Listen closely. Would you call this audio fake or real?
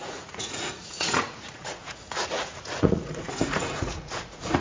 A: fake